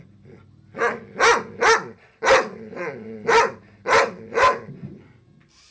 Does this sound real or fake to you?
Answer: real